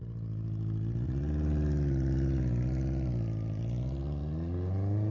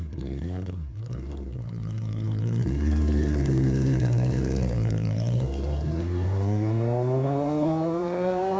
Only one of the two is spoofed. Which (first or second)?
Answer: second